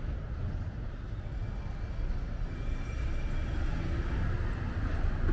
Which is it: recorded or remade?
recorded